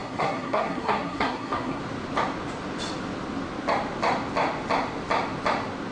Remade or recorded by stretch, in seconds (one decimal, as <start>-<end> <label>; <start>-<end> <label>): 0.0-1.8 remade; 1.8-5.9 recorded